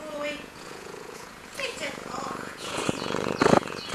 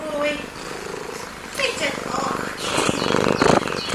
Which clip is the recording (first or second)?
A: second